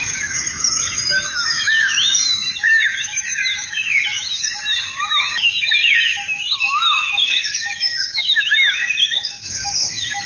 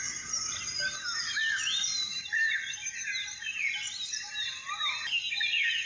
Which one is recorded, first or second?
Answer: second